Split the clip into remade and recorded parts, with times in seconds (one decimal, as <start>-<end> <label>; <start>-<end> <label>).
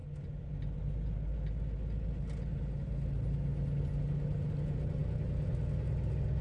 0.0-6.4 recorded